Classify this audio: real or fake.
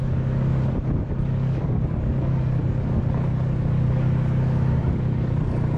fake